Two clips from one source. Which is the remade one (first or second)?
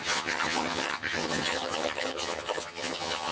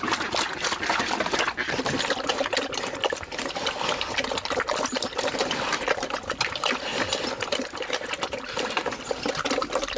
first